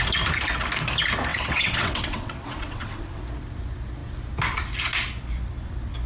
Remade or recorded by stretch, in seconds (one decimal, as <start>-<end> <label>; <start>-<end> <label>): 0.0-1.3 recorded; 1.3-3.2 remade; 3.2-6.1 recorded